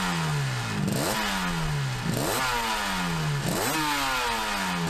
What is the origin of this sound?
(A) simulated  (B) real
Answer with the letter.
B